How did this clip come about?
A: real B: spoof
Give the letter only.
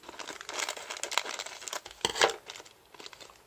A